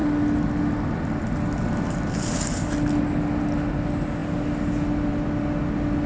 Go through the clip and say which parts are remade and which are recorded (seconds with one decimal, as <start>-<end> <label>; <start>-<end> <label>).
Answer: 0.0-6.1 recorded